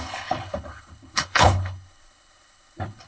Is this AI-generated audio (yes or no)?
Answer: yes